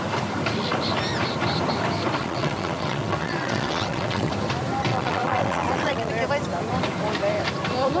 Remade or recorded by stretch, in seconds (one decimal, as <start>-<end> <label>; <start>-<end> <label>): 0.0-2.2 recorded; 2.2-4.3 remade; 4.3-4.9 recorded; 4.9-6.1 remade; 6.1-8.0 recorded

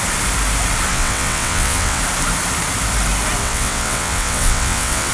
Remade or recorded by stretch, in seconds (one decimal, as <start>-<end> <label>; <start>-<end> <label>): 0.0-0.9 recorded; 0.9-2.0 remade; 2.0-3.4 recorded; 3.4-5.1 remade

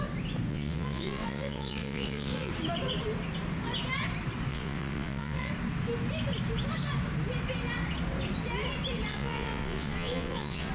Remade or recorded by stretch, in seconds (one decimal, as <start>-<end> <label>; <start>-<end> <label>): 0.0-0.5 recorded; 0.5-2.5 remade; 2.5-4.5 recorded; 4.5-5.5 remade; 5.5-9.1 recorded; 9.1-10.7 remade

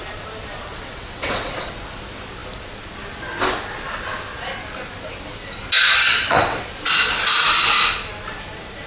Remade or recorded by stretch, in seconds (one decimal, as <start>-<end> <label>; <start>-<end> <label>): 0.0-0.7 recorded; 0.7-1.7 remade; 1.7-6.0 recorded; 6.0-6.6 remade; 6.6-8.9 recorded

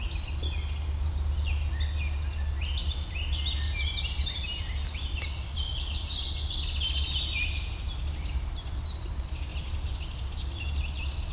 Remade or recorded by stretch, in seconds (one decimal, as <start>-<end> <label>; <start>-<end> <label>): 0.0-11.3 recorded